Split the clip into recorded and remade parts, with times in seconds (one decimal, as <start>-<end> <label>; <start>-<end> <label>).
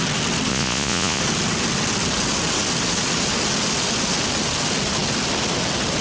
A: 0.0-0.5 recorded; 0.5-1.2 remade; 1.2-6.0 recorded